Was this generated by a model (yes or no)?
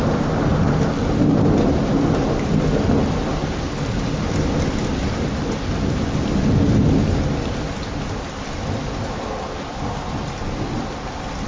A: no